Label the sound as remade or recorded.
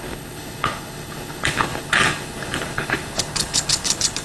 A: remade